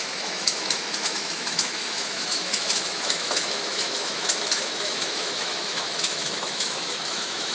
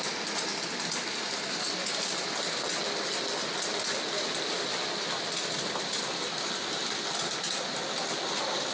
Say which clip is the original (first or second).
second